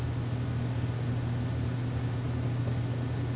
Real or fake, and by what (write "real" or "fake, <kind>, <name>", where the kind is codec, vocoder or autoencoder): real